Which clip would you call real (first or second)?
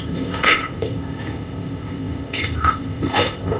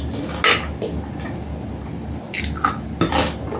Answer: second